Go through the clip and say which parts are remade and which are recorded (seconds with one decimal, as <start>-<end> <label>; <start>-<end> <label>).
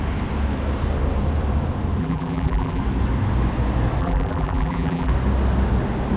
0.0-2.0 recorded; 2.0-2.8 remade; 2.8-4.0 recorded; 4.0-5.1 remade; 5.1-6.2 recorded